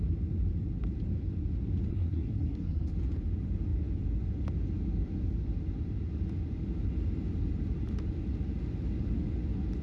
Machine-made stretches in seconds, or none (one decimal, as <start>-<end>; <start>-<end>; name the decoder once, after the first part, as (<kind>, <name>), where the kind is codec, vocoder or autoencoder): 1.9-2.9 (codec, SNAC)